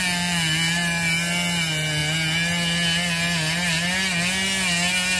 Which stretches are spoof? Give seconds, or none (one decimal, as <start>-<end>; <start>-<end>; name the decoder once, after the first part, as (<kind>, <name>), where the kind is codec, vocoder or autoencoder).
none